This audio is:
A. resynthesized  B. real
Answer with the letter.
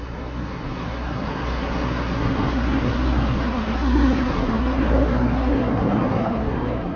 A